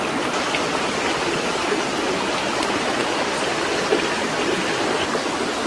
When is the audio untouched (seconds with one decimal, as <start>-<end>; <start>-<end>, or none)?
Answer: 0.0-5.7